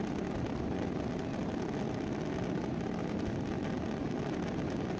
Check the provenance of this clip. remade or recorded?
recorded